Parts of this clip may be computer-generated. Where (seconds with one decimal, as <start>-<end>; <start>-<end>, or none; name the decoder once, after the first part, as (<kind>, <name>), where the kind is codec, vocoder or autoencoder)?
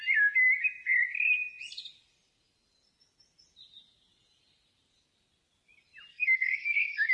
6.1-7.1 (codec, SNAC)